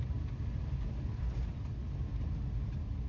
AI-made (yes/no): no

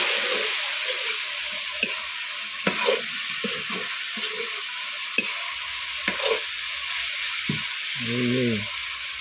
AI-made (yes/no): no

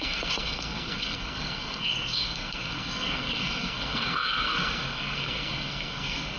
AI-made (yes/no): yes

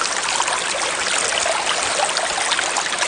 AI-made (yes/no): no